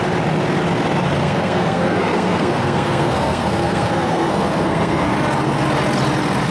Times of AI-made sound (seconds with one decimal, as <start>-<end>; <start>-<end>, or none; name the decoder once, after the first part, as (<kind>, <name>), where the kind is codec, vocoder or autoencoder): 1.2-5.1 (codec, SNAC)